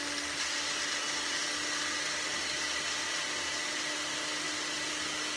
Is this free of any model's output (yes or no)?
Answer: yes